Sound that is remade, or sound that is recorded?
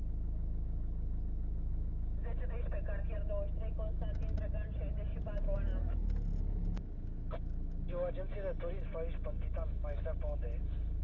recorded